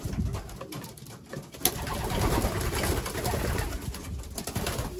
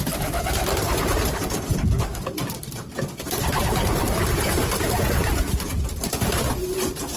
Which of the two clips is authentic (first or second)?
first